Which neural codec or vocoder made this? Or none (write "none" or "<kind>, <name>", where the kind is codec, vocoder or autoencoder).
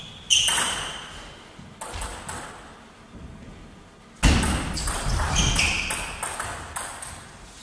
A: none